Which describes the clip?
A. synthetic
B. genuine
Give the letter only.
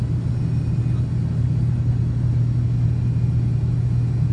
B